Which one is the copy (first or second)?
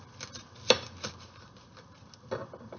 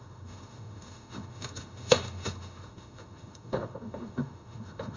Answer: second